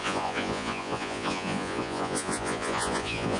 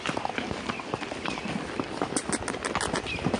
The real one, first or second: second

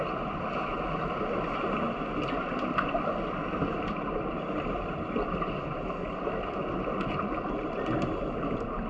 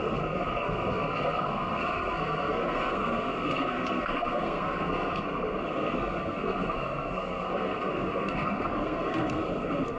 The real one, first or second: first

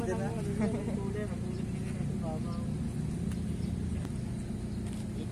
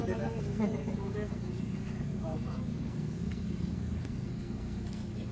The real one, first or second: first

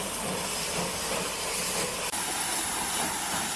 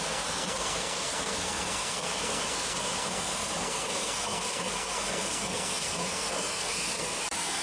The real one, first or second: first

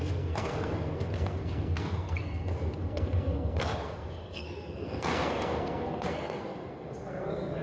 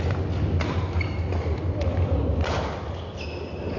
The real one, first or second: second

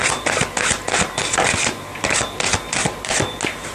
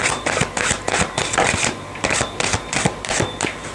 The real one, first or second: first